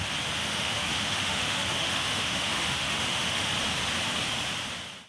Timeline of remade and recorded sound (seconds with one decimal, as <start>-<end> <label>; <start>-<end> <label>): 0.0-0.4 recorded; 0.4-3.5 remade; 3.5-5.1 recorded